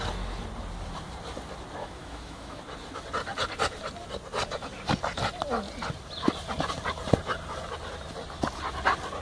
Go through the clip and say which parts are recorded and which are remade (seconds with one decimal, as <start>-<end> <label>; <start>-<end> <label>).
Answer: 0.0-1.8 recorded; 1.8-2.6 remade; 2.6-9.2 recorded